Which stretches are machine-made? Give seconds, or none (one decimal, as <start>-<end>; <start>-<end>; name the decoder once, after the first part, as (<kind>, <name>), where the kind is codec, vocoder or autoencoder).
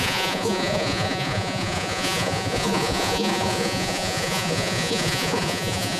0.0-6.0 (vocoder, Vocos)